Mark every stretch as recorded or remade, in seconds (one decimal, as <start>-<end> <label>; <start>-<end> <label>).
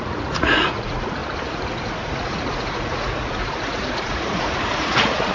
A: 0.0-5.3 remade